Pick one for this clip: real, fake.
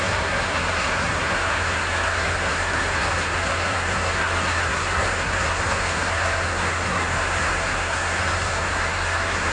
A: fake